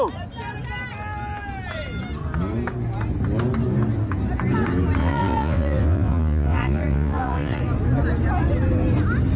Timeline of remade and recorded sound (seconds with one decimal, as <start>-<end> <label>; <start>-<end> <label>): 0.0-5.0 recorded; 5.0-7.6 remade; 7.6-9.4 recorded